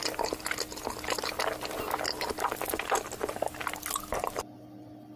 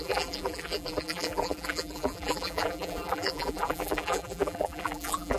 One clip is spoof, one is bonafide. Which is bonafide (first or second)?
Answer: first